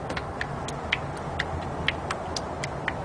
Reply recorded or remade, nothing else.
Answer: recorded